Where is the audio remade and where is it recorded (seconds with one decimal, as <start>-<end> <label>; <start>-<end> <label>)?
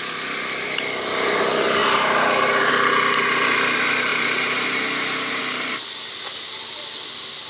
0.0-1.8 recorded; 1.8-2.7 remade; 2.7-4.1 recorded; 4.1-5.4 remade; 5.4-7.5 recorded